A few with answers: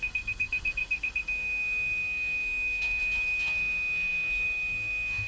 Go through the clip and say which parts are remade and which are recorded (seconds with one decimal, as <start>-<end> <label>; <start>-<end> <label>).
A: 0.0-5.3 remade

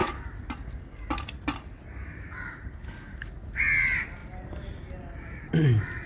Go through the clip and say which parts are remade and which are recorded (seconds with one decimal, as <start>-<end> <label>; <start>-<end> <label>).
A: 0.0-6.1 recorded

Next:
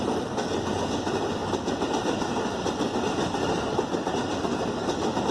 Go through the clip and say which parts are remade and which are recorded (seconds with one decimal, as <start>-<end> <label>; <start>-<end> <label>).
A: 0.0-5.3 recorded

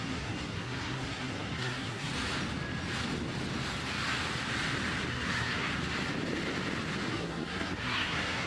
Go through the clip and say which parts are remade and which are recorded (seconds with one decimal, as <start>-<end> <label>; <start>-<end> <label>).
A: 0.0-2.1 remade; 2.1-5.1 recorded; 5.1-5.7 remade; 5.7-7.1 recorded; 7.1-8.5 remade

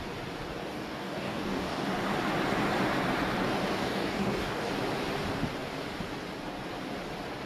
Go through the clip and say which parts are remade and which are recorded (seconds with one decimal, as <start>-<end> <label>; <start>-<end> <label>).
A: 0.0-0.6 recorded; 0.6-1.9 remade; 1.9-3.8 recorded; 3.8-4.7 remade; 4.7-7.5 recorded